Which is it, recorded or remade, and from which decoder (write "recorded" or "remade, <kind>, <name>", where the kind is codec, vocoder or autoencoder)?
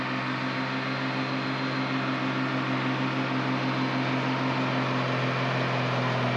recorded